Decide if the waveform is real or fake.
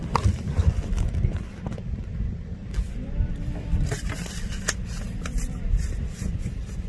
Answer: fake